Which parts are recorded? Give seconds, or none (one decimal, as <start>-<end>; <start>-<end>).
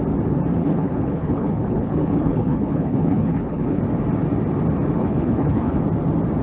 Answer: 0.0-0.6; 3.8-5.0; 5.8-6.4